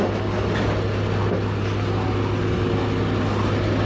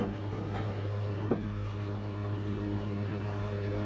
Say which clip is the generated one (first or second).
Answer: second